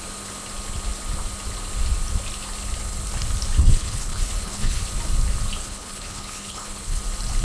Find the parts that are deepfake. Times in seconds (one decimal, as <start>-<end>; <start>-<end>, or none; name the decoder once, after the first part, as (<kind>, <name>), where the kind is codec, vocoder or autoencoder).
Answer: 3.6-4.8 (codec, HILCodec); 5.6-7.0